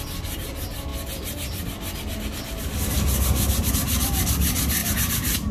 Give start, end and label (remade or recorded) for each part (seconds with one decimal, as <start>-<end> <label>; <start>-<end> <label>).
0.0-4.8 recorded; 4.8-5.5 remade